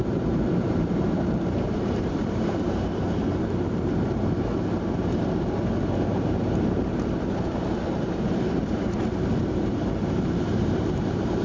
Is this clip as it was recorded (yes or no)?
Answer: no